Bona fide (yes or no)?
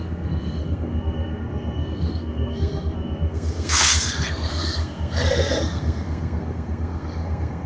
no